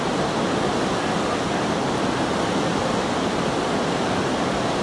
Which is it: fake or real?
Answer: real